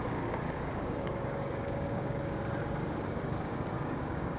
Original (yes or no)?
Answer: no